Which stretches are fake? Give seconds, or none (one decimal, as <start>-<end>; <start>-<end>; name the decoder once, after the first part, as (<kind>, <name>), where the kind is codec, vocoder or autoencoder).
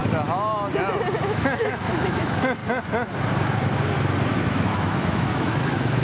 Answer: 1.1-2.6 (autoencoder, DAC-VAE); 4.3-6.0